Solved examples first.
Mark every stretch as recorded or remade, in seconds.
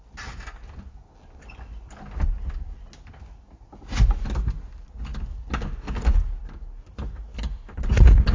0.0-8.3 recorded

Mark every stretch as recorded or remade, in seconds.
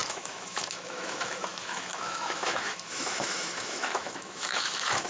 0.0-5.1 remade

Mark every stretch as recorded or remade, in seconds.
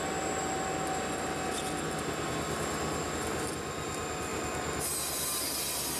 0.0-6.0 recorded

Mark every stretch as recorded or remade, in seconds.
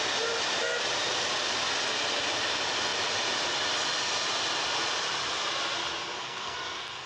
0.0-6.2 recorded; 6.2-7.1 remade